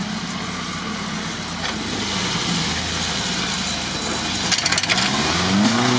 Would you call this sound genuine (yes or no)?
yes